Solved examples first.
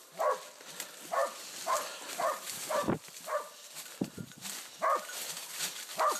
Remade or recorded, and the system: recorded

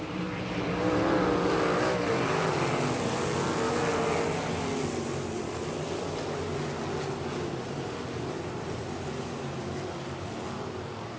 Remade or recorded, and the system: recorded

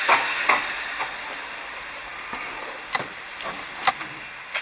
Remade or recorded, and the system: remade, vocoder, BigVGAN v2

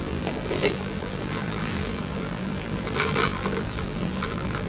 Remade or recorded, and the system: remade, vocoder, BigVGAN v2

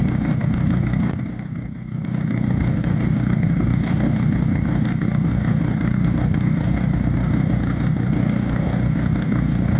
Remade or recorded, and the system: remade, codec, DAC